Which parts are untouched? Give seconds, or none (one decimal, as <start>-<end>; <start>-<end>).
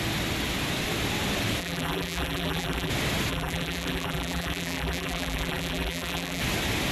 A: 0.0-1.6; 2.9-3.3; 6.4-6.9